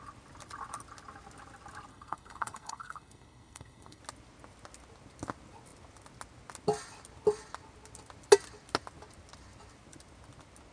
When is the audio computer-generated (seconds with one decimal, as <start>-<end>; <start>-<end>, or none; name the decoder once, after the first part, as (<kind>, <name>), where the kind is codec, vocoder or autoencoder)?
1.9-4.0 (codec, SNAC)